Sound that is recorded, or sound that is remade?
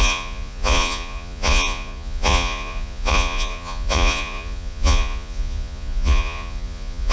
remade